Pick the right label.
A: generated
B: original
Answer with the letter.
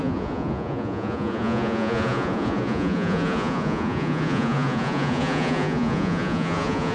A